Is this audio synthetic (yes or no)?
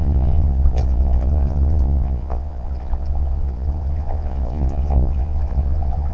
yes